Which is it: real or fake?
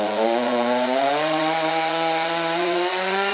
fake